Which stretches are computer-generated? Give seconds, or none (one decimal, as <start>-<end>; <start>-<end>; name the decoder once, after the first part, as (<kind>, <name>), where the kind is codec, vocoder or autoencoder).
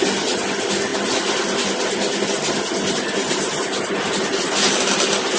none